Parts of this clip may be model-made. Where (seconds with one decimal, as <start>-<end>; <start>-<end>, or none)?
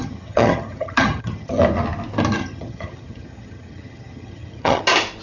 0.0-1.6; 2.4-4.8